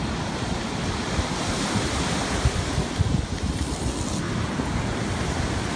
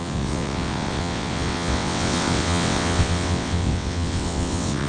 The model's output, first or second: second